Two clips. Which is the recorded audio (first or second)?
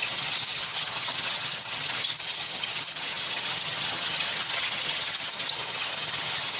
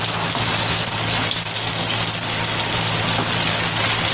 second